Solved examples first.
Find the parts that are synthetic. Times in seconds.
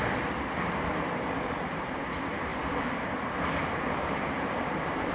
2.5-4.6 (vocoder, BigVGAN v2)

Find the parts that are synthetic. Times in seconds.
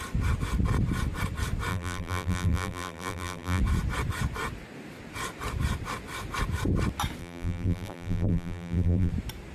1.7-3.6 (vocoder, BigVGAN v2); 7.2-9.1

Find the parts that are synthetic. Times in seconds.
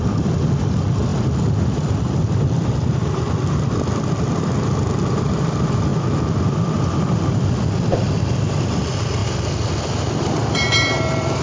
0.0-11.4 (vocoder, BigVGAN v2)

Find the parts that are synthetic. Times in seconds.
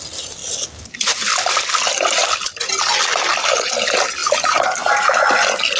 none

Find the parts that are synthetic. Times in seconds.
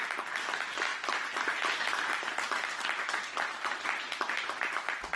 none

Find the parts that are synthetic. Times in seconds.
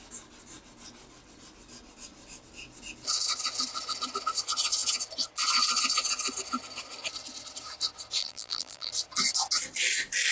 8.2-8.9 (vocoder, BigVGAN v2)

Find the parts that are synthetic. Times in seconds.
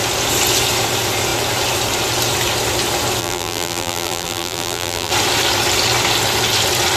3.2-5.1 (vocoder, BigVGAN v2)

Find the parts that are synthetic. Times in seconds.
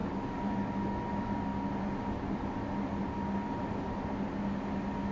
none